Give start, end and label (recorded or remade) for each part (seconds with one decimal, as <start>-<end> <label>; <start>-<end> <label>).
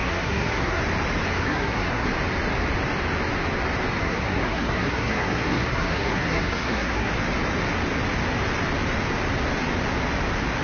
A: 0.0-0.8 remade; 0.8-1.4 recorded; 1.4-2.1 remade; 2.1-4.0 recorded; 4.0-7.1 remade; 7.1-10.6 recorded